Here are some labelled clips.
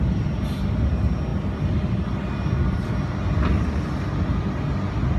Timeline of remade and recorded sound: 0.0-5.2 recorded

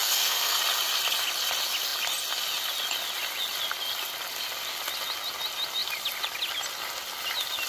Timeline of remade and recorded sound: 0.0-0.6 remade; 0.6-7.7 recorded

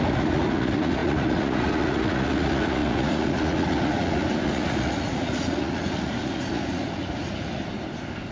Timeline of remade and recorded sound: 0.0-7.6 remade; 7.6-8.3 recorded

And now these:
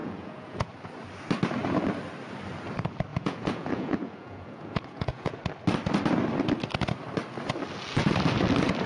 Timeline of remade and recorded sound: 0.0-0.7 remade; 0.7-3.1 recorded; 3.1-5.4 remade; 5.4-8.9 recorded